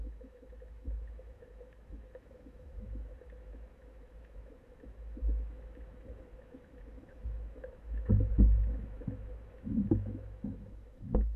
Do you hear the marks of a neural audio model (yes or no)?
yes